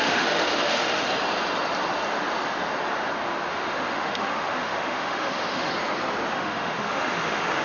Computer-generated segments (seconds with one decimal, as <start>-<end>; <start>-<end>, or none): 0.0-1.1; 3.5-5.7; 6.3-7.6